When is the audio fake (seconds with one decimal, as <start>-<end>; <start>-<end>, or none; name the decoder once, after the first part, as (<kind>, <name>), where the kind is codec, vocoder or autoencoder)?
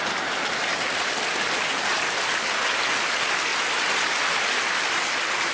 none